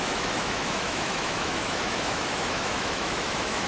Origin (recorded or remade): remade